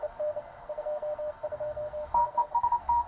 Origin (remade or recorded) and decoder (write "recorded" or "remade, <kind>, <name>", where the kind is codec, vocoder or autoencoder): remade, codec, SNAC